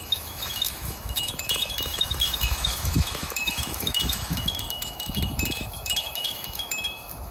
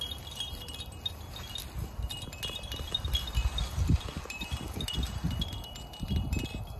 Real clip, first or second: second